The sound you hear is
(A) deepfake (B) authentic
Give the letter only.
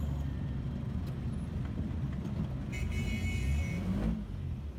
B